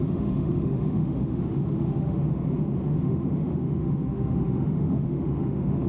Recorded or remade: remade